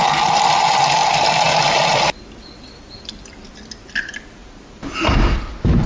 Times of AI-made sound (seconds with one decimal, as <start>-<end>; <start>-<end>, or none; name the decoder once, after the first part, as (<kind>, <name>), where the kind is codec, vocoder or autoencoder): 0.0-4.4 (vocoder, BigVGAN v2)

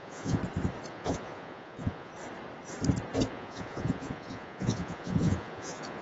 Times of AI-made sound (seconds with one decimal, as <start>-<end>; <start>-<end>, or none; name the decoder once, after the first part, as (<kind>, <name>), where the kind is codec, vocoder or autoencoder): 0.0-0.4 (vocoder, Vocos); 0.9-2.1; 3.3-6.0

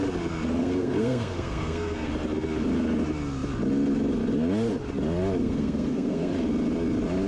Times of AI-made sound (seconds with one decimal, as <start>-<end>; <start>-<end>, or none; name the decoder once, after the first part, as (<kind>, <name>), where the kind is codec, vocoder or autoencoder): 0.6-2.1 (codec, SNAC); 5.4-6.3

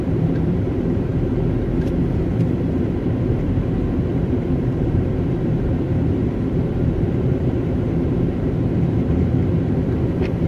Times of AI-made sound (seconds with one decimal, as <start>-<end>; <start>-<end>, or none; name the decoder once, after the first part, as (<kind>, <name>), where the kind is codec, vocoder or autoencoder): 0.0-1.1 (vocoder, BigVGAN v2); 2.0-9.4; 10.1-10.5

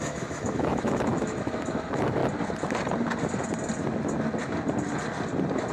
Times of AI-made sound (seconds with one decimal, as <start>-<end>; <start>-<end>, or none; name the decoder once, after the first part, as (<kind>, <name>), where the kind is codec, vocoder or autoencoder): 0.0-2.2 (autoencoder, DAC-VAE)

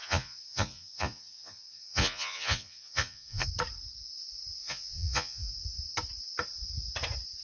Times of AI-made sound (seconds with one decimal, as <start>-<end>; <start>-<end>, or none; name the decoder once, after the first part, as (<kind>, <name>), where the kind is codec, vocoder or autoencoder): 0.0-3.5 (vocoder, Vocos); 4.6-5.5

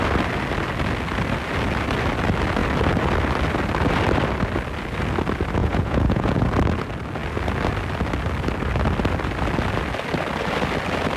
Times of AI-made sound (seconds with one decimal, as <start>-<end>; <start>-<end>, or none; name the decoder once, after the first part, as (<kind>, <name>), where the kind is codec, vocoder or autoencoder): 5.6-6.4 (vocoder, Vocos)

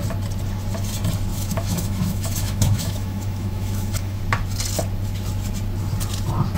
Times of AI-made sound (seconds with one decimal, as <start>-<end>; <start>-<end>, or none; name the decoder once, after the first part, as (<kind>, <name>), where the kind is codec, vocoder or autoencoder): 1.3-4.2 (autoencoder, DAC-VAE)